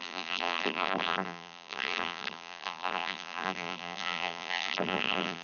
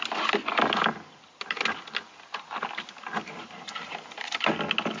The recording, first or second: second